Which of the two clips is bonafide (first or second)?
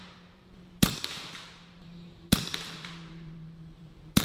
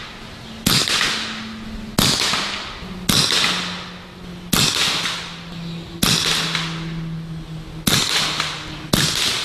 second